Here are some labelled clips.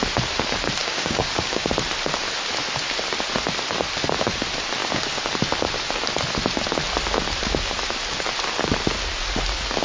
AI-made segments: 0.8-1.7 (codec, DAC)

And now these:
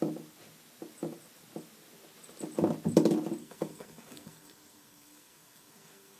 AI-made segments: 3.4-6.2 (codec, SNAC)